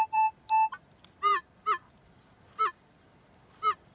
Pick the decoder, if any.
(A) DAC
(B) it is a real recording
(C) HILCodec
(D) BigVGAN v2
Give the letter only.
D